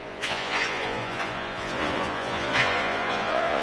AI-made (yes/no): yes